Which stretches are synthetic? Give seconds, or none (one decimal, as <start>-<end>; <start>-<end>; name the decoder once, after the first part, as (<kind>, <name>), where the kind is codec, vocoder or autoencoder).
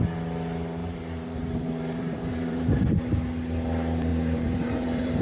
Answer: 0.8-3.0 (vocoder, BigVGAN v2); 4.1-5.2